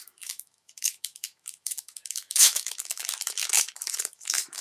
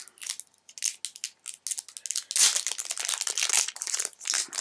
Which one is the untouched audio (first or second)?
second